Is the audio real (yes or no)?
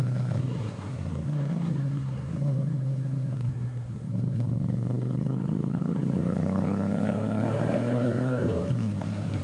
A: no